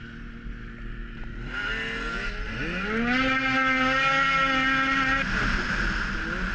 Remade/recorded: recorded